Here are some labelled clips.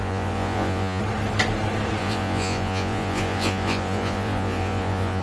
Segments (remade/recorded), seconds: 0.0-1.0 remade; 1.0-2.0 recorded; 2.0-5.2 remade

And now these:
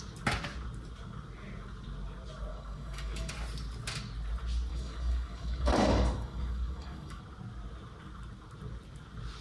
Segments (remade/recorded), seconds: 0.0-2.5 recorded; 2.5-3.3 remade; 3.3-4.7 recorded; 4.7-7.2 remade; 7.2-9.4 recorded

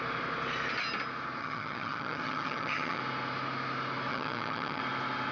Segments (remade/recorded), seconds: 0.0-1.4 recorded; 1.4-3.0 remade; 3.0-4.1 recorded; 4.1-4.8 remade; 4.8-5.3 recorded

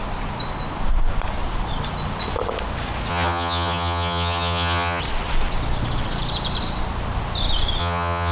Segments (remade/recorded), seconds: 0.0-3.1 recorded; 3.1-5.0 remade; 5.0-7.8 recorded; 7.8-8.3 remade